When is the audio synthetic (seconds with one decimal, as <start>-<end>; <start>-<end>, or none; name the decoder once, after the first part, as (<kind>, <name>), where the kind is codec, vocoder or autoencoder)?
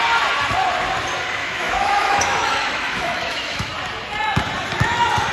1.4-3.7 (autoencoder, DAC-VAE)